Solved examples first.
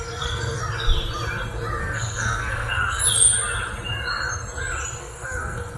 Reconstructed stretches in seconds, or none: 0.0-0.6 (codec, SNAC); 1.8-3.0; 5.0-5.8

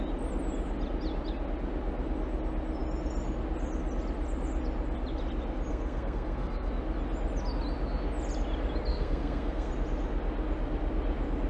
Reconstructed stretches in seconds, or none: 5.7-6.7 (codec, SNAC); 8.9-9.7

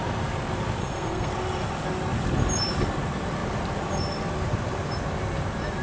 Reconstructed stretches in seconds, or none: 0.8-1.3 (codec, SNAC)

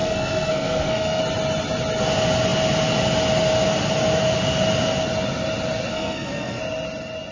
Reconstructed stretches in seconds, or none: 0.0-1.2 (codec, SNAC); 5.9-6.6

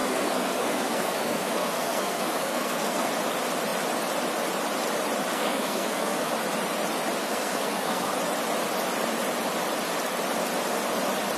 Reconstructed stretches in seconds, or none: 0.0-3.1 (codec, SNAC); 5.3-6.3; 7.2-8.1

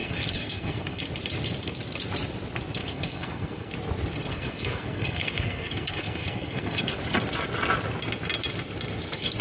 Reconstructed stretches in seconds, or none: 0.0-1.0 (codec, SNAC); 2.8-3.7; 4.3-7.0

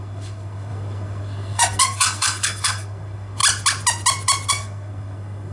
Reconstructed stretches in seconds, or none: 0.0-3.4 (codec, SNAC); 4.5-5.5

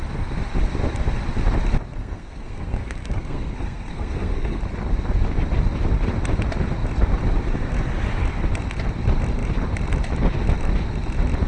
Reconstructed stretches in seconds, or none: 2.0-4.6 (codec, SNAC)